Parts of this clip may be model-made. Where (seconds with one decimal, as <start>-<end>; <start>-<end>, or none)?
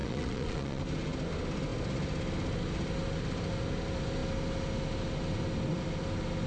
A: 0.0-0.8